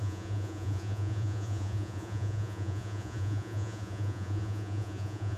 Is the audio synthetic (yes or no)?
yes